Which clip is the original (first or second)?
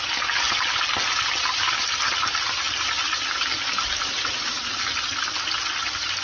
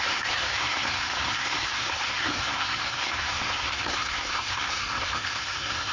first